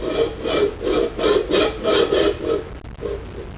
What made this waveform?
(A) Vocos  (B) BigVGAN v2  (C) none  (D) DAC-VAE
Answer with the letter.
C